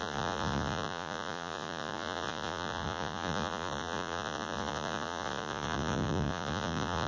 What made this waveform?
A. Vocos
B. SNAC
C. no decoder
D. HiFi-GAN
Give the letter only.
A